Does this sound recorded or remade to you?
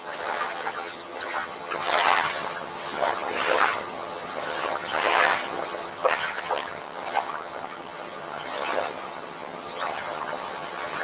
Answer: remade